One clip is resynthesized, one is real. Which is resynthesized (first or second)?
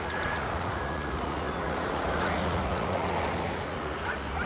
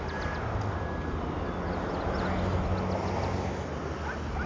first